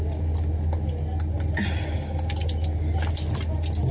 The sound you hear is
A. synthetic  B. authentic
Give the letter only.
B